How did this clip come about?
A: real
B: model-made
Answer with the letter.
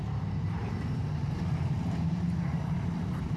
B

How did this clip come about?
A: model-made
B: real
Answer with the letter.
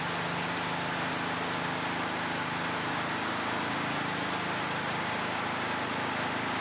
B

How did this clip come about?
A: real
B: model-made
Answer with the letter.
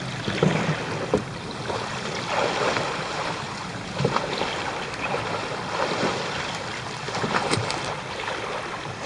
B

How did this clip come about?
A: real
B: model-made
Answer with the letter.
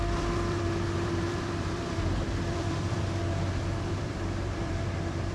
B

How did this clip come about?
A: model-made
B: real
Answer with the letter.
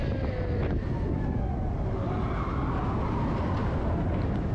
B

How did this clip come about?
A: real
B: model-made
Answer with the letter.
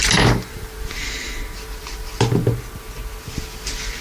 A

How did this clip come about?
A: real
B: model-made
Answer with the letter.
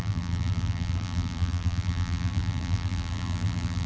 B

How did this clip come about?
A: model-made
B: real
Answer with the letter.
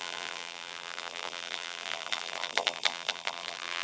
A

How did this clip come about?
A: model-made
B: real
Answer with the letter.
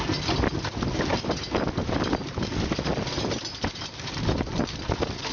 B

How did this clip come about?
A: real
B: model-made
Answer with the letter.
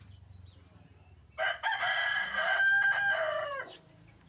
A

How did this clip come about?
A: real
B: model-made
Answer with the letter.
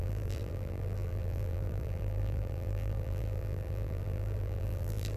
B